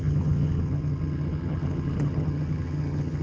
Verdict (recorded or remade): remade